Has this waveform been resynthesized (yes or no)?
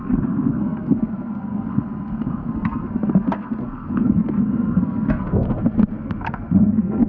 yes